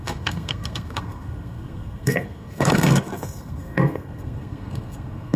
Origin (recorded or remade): remade